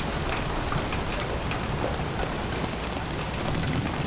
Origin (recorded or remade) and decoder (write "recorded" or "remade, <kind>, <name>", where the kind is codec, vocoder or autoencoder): recorded